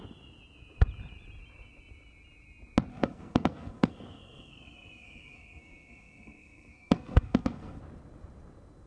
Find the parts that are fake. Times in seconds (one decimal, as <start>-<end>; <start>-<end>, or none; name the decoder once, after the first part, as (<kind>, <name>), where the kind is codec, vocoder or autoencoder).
2.9-7.8 (codec, SNAC)